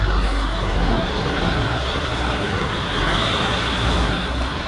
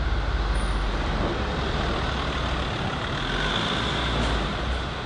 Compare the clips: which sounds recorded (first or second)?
second